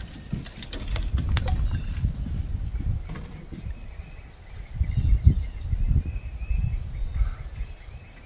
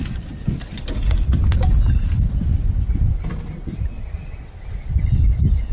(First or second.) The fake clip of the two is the first